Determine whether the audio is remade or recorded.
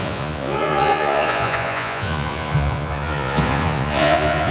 remade